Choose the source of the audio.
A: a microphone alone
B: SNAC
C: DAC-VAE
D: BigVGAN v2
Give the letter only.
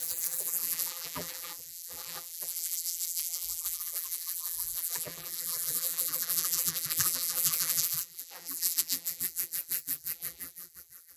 D